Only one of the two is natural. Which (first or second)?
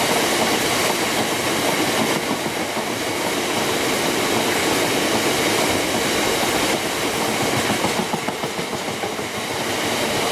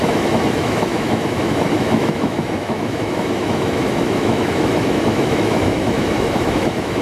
first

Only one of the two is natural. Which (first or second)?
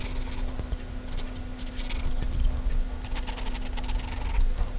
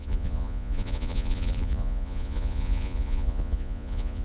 first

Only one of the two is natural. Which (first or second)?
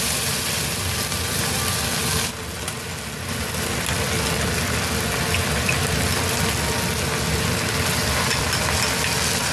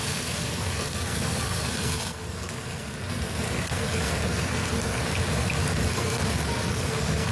first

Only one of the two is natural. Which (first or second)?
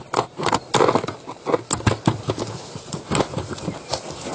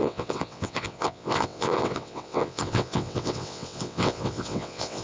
first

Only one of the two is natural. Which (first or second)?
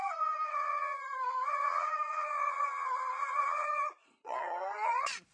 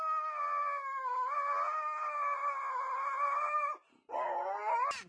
second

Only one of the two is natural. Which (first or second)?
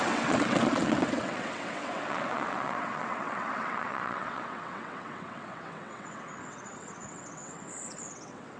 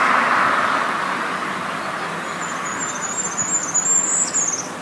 second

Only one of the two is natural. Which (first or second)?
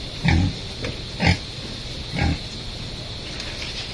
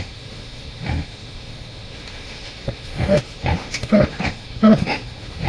first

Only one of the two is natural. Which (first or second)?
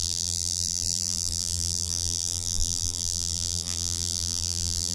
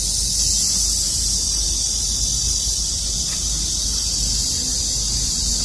second